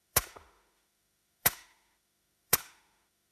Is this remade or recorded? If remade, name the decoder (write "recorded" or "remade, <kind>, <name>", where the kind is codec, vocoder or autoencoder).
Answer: remade, autoencoder, DAC-VAE